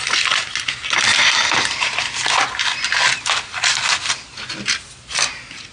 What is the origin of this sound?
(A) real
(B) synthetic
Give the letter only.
A